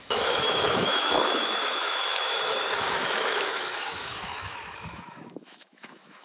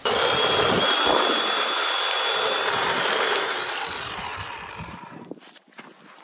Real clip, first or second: second